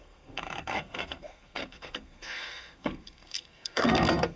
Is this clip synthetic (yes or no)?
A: yes